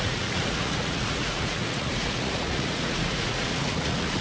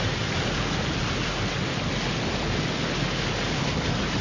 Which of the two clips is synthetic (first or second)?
first